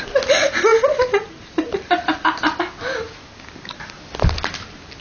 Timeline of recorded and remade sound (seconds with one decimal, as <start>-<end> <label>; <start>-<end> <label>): 0.0-5.0 recorded